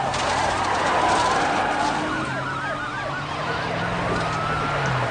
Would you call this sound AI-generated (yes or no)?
no